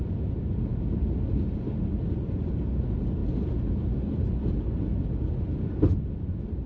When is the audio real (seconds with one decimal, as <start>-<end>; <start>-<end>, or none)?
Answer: 0.0-6.7